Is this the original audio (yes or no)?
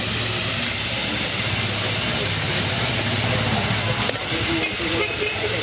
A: yes